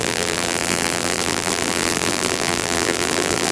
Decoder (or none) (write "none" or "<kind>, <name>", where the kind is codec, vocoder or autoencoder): vocoder, BigVGAN v2